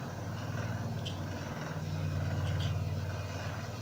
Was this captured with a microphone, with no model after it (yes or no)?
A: yes